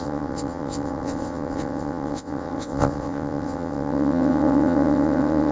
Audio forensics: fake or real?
fake